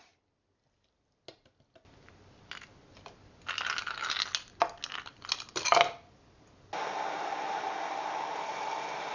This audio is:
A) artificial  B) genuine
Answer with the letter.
B